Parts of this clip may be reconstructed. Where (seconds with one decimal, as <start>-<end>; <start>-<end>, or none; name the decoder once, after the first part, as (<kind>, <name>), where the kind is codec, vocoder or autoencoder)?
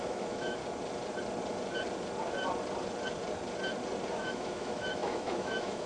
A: 0.0-0.6 (autoencoder, DAC-VAE); 4.1-5.9